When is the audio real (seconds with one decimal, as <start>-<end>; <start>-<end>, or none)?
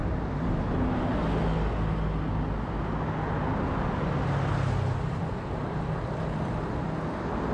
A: 0.0-5.2; 6.5-7.5